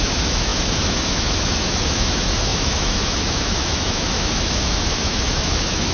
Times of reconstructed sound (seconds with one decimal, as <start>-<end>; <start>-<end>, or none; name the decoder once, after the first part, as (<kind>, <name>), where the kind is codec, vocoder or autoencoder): 0.0-5.9 (autoencoder, DAC-VAE)

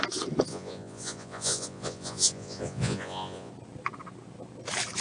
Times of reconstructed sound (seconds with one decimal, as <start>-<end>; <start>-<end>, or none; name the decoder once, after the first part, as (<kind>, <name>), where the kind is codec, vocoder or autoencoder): 0.5-3.5 (vocoder, Vocos)

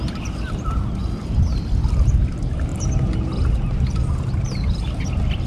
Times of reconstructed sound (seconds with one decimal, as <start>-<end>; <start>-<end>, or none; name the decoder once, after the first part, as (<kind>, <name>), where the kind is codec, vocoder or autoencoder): none

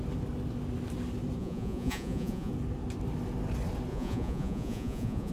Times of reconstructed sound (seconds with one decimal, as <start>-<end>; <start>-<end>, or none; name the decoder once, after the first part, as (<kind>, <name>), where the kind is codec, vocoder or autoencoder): 1.4-2.5 (vocoder, Vocos); 3.9-5.3

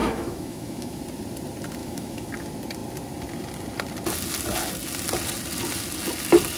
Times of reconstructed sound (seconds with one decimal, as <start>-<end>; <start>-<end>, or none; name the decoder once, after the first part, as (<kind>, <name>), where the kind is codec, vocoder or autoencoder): 0.0-1.0 (autoencoder, DAC-VAE); 1.8-2.3

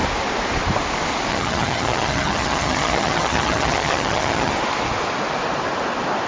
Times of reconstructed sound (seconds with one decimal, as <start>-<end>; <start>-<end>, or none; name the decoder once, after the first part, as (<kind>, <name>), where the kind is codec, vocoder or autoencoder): 1.3-4.5 (vocoder, HiFi-GAN)